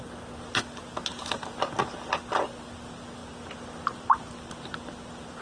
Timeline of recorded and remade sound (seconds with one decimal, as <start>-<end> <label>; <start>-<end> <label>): 0.0-5.4 recorded